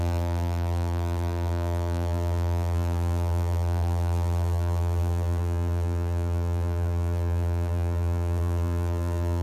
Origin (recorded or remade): remade